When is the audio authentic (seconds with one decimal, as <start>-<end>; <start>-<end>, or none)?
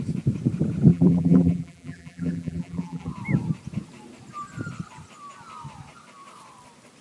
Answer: 0.0-0.9; 3.1-7.0